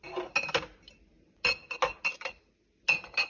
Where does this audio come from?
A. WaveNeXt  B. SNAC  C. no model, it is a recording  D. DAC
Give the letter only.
C